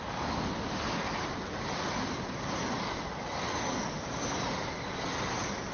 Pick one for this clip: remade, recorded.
recorded